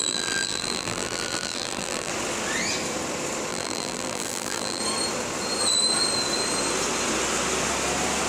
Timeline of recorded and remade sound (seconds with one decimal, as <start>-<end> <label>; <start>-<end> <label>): 0.0-2.1 remade; 2.1-3.5 recorded; 3.5-4.8 remade; 4.8-8.3 recorded